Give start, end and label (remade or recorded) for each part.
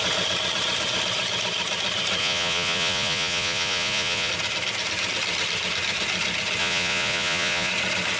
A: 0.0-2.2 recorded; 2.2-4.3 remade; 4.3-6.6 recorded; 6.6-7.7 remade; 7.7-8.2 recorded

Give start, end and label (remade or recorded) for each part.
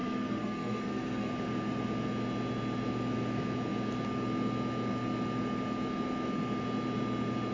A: 0.0-1.3 remade; 1.3-7.5 recorded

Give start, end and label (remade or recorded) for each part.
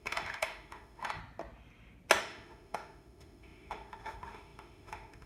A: 0.0-1.2 remade; 1.2-2.2 recorded; 2.2-5.3 remade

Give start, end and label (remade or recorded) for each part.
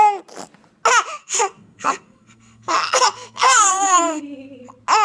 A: 0.0-1.2 recorded; 1.2-4.2 remade; 4.2-5.0 recorded